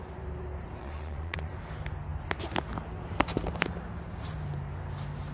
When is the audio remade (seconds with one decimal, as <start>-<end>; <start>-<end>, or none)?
0.8-1.5